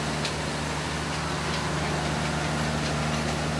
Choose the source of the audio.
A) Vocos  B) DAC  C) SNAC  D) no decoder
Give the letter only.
D